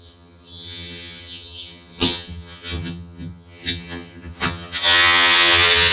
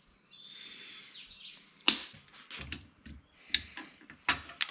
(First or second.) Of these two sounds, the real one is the second